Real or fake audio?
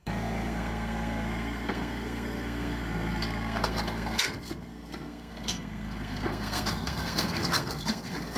fake